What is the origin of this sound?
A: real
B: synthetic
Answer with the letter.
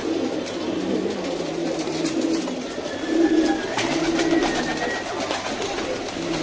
A